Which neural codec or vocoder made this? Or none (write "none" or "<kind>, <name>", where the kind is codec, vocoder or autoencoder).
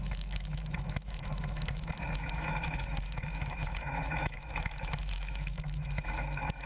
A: autoencoder, DAC-VAE